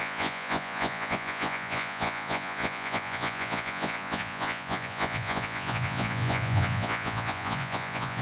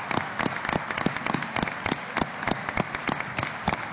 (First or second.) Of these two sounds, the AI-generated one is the first